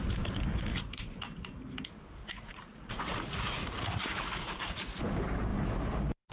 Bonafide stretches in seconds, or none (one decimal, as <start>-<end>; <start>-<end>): 0.0-0.7; 1.2-2.2; 5.0-6.3